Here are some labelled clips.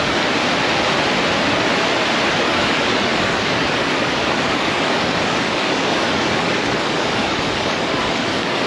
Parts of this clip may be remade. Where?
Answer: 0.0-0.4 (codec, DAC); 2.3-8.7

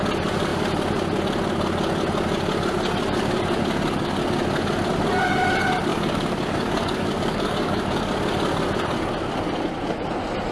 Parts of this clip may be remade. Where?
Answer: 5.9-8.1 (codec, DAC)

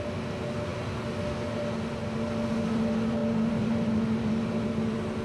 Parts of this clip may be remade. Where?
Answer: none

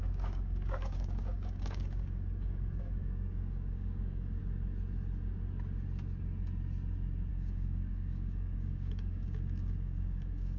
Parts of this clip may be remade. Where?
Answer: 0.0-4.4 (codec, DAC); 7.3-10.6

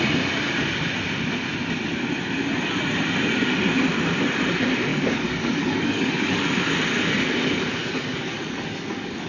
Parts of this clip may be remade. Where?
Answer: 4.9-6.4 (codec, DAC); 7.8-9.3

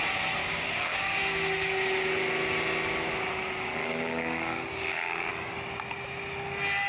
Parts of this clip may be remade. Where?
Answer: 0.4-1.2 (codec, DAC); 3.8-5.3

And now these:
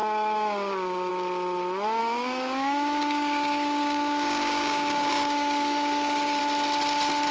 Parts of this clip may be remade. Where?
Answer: 0.0-1.1 (codec, DAC); 2.0-6.4